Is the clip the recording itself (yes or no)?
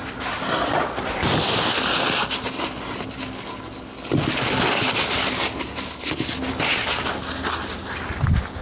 yes